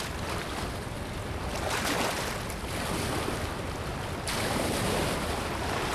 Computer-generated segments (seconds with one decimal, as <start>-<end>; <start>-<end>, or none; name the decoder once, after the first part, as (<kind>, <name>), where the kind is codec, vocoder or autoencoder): none